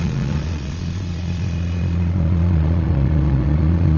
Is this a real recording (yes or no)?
no